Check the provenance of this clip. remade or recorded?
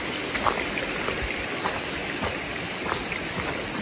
recorded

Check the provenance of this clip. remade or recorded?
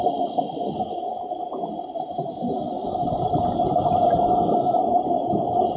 remade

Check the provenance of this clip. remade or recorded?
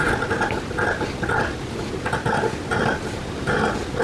recorded